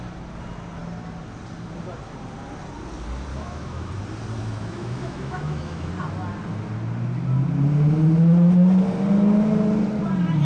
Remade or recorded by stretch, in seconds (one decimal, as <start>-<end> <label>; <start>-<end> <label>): 0.0-3.3 recorded; 3.3-3.9 remade; 3.9-4.4 recorded; 4.4-5.9 remade; 5.9-10.4 recorded